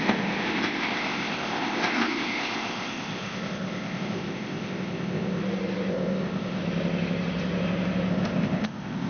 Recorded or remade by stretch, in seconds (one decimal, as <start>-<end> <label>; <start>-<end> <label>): 0.0-5.4 remade; 5.4-5.9 recorded; 5.9-6.6 remade; 6.6-8.1 recorded; 8.1-9.1 remade